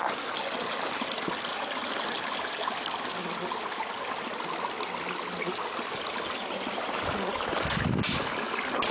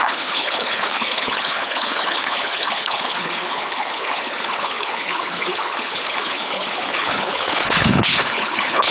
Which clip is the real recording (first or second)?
first